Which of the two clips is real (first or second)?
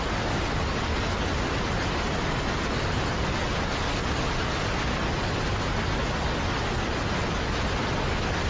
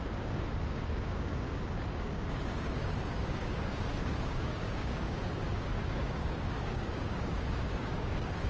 first